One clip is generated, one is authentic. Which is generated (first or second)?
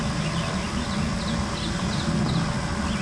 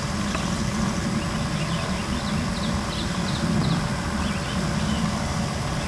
second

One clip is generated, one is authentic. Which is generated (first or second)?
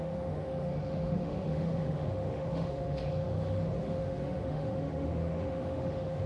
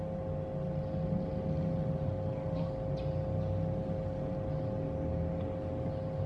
first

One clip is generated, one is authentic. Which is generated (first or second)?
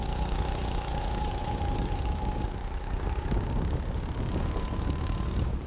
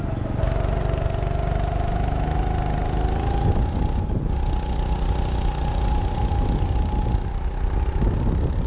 first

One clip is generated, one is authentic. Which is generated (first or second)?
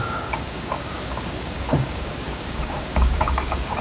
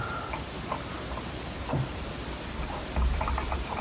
first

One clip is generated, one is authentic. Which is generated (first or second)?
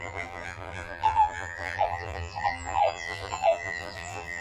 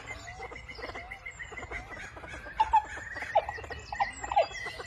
first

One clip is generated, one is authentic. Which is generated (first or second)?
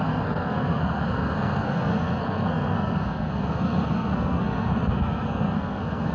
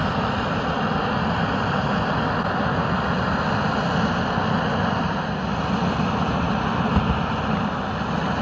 first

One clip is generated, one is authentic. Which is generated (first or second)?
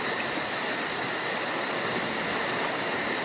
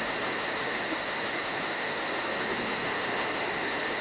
second